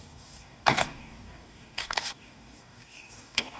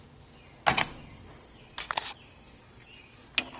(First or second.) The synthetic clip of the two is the first